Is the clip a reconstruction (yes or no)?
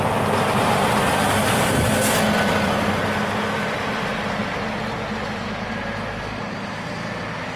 no